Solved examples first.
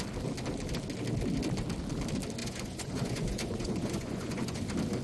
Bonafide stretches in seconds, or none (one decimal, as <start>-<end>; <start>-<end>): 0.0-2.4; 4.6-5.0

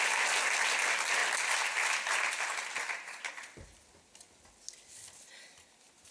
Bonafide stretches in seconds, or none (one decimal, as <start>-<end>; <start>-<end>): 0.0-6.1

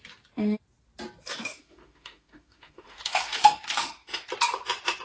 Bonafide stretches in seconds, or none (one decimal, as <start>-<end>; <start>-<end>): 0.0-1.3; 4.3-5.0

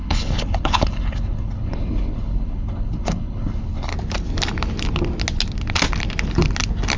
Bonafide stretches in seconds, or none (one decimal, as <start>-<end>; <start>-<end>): 3.9-7.0

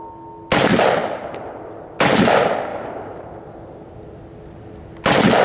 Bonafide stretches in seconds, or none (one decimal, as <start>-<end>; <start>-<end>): 0.0-1.0; 1.6-2.7; 3.3-5.4

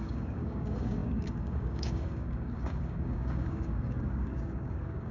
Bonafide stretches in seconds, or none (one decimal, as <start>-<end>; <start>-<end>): none

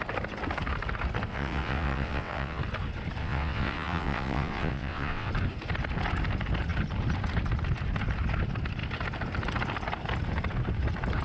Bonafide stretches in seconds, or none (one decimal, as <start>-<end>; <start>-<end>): 0.0-1.3; 2.6-3.2; 5.3-11.2